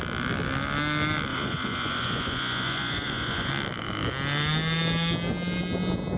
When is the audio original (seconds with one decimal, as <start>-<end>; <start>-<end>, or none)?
0.0-1.3; 3.5-6.2